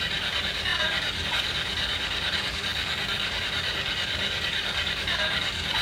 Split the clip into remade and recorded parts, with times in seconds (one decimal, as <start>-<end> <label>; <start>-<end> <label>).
0.0-5.8 remade